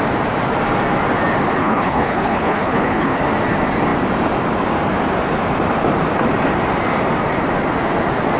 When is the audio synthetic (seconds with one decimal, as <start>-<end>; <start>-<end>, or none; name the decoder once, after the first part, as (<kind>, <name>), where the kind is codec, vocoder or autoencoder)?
1.6-3.2 (codec, HILCodec)